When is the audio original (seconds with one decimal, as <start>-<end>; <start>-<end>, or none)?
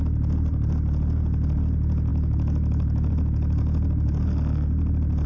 0.0-2.1; 3.1-5.3